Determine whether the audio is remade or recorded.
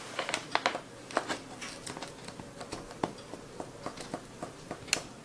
recorded